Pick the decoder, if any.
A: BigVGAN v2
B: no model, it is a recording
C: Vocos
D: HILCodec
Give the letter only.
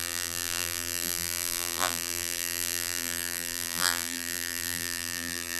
A